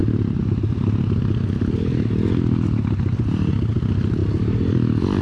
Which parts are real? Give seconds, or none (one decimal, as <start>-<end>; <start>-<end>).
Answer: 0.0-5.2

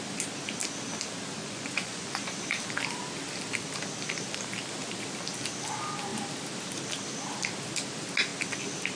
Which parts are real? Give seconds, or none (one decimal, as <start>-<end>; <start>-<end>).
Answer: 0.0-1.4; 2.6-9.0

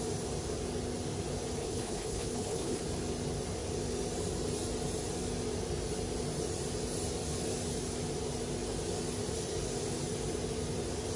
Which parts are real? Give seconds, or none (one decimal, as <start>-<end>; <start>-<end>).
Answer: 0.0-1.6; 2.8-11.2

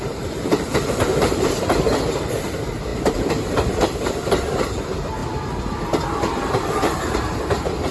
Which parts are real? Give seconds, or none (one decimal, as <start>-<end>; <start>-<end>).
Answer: 5.2-6.3

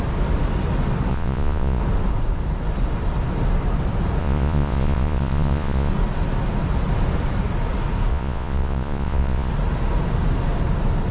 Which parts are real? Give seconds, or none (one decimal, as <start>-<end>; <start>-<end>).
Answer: 0.0-1.1; 1.8-4.2; 5.9-8.1; 9.5-11.1

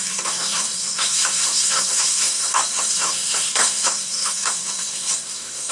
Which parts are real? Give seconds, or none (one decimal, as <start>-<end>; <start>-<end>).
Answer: none

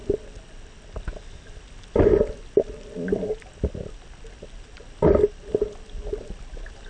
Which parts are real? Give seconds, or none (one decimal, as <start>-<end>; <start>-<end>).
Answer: 0.0-6.9